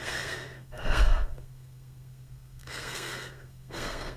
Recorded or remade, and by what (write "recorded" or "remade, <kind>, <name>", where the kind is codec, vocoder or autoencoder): remade, codec, SNAC